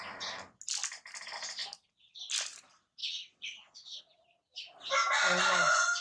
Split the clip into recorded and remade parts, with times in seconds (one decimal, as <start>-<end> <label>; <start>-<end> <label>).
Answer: 0.0-3.0 recorded; 3.0-4.0 remade; 4.0-6.0 recorded